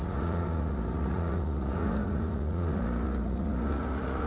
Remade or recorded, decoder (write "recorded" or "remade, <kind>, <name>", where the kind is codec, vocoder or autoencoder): remade, vocoder, Vocos